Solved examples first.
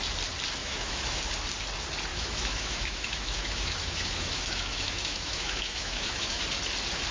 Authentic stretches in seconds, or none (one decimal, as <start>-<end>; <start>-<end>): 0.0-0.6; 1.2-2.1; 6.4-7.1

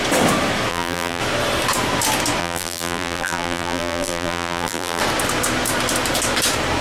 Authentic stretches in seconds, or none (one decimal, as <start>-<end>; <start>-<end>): 0.0-0.7; 1.2-2.4; 5.0-6.8

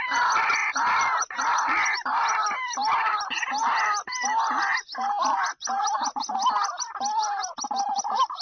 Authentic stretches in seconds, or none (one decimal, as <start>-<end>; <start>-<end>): 0.0-8.4

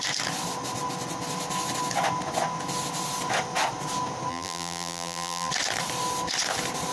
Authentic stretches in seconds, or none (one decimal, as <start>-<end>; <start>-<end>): 0.0-4.3; 5.5-6.9

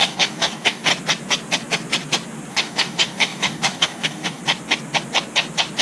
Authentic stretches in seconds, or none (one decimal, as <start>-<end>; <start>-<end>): 0.9-2.5; 4.4-5.8